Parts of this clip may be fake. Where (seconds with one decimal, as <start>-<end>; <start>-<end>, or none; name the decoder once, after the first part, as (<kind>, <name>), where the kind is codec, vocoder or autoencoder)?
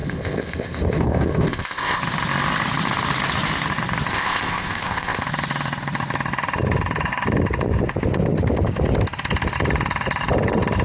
0.0-2.0 (codec, ZipCodec); 4.1-5.2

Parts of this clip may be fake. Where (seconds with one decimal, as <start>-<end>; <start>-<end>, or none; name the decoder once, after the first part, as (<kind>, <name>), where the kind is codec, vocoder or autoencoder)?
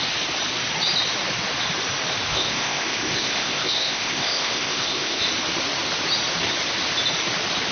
2.3-5.2 (codec, ZipCodec)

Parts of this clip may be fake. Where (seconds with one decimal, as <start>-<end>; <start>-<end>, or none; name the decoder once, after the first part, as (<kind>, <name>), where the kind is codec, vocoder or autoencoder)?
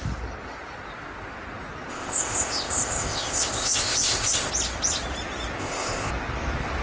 1.9-4.5 (codec, ZipCodec); 5.6-6.1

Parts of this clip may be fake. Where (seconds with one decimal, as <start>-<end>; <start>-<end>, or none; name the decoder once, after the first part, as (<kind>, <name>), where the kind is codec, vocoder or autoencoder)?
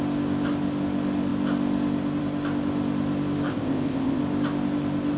3.5-4.2 (codec, ZipCodec)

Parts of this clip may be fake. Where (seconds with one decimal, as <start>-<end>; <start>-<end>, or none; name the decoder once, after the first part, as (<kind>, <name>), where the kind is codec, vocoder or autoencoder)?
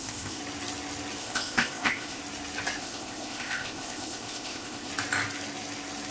0.0-0.4 (codec, ZipCodec); 1.2-2.2; 2.8-4.9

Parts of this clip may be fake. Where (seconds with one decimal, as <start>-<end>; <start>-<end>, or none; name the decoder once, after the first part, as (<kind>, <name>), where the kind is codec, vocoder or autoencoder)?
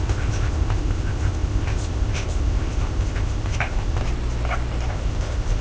0.0-4.0 (codec, ZipCodec); 4.9-5.6